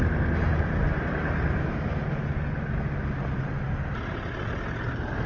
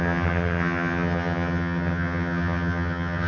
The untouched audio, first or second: first